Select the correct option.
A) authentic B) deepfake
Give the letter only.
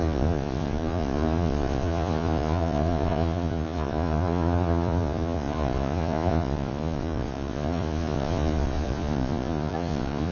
B